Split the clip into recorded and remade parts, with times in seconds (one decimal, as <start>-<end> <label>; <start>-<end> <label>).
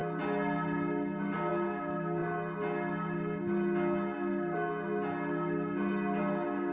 0.0-6.7 recorded